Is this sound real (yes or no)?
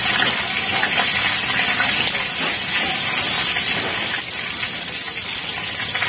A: yes